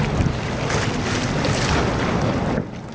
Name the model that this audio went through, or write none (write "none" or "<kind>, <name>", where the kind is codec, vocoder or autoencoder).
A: none